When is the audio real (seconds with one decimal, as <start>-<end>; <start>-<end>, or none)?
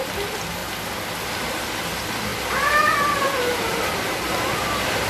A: 0.0-5.1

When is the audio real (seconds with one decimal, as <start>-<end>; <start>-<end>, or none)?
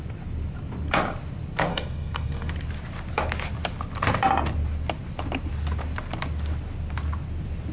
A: 0.0-1.7; 2.5-7.7